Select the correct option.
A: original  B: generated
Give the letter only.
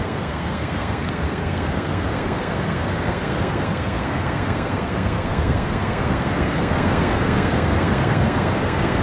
B